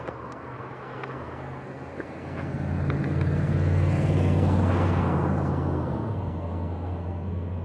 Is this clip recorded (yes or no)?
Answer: no